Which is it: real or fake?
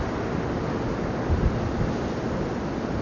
real